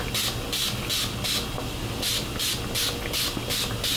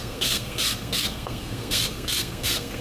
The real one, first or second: first